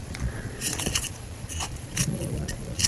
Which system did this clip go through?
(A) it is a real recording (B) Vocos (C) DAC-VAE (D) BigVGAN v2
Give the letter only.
B